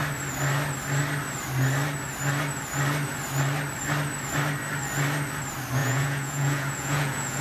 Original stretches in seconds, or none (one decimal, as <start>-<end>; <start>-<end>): 0.0-5.8